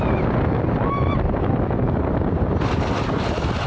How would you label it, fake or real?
real